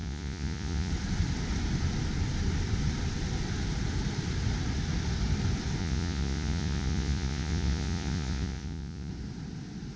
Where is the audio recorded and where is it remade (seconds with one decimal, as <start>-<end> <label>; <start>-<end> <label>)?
0.0-0.9 remade; 0.9-5.8 recorded; 5.8-9.1 remade; 9.1-10.0 recorded